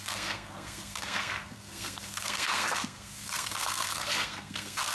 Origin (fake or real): fake